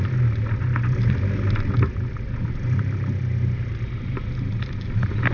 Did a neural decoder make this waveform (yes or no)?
no